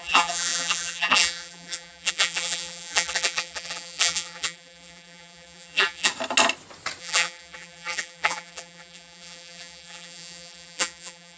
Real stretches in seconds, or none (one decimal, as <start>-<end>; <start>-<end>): 6.1-7.0